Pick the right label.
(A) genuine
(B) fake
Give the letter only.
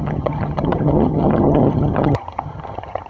B